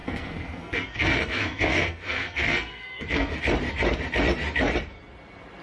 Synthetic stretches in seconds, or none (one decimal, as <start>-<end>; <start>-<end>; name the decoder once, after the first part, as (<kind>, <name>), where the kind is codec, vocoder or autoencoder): 0.0-3.4 (codec, SNAC)